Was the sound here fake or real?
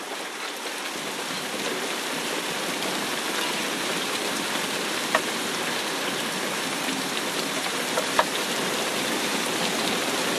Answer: fake